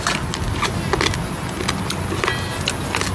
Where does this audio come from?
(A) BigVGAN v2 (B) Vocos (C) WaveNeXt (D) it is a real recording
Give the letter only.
D